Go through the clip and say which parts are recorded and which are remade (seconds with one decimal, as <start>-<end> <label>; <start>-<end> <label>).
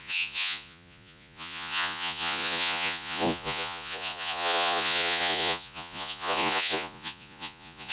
0.0-7.9 remade